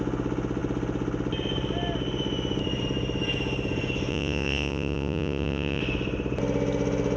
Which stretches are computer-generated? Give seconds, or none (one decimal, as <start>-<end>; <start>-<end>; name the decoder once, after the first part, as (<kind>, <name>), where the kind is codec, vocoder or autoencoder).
4.1-5.8 (vocoder, Vocos)